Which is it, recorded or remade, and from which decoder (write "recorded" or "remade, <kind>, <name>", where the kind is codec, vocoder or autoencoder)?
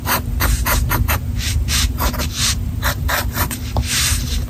remade, vocoder, BigVGAN v2